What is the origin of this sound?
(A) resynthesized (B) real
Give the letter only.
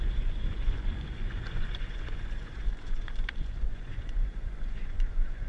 A